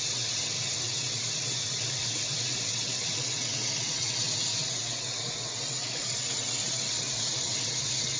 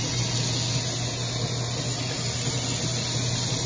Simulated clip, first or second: first